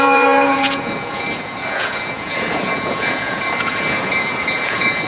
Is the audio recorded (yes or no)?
no